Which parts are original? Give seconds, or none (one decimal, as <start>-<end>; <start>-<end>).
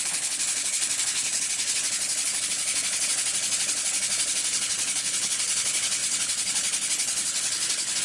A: none